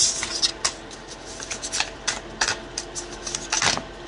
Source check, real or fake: real